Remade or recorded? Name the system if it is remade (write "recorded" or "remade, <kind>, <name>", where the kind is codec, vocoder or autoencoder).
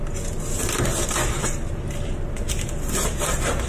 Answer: recorded